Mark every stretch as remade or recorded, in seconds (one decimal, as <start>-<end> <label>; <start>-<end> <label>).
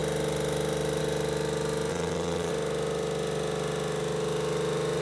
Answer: 0.0-1.9 recorded; 1.9-2.5 remade; 2.5-5.0 recorded